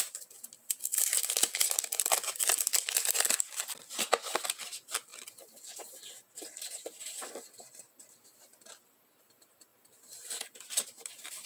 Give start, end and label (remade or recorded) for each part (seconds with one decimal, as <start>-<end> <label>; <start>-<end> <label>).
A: 0.0-0.9 recorded; 0.9-2.1 remade; 2.1-9.7 recorded; 9.7-11.5 remade